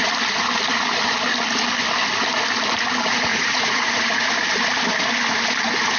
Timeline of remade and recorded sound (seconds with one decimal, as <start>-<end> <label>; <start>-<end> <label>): 0.0-3.3 recorded; 3.3-4.3 remade; 4.3-6.0 recorded